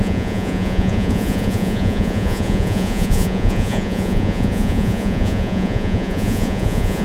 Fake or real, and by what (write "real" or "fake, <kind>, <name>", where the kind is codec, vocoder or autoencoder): fake, vocoder, Vocos